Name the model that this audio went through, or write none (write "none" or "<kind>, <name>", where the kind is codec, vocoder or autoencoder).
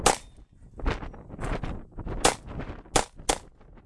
none